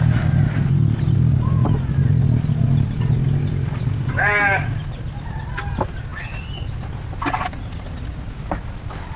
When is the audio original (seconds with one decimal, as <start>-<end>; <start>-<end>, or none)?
0.0-9.2

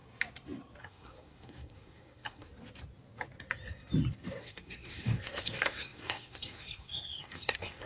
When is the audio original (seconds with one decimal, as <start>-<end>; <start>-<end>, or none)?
0.0-0.8; 2.5-4.4

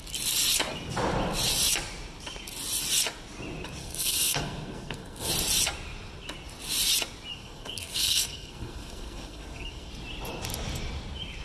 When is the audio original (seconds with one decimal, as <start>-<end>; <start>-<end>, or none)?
0.0-3.8; 5.3-7.3; 9.9-11.4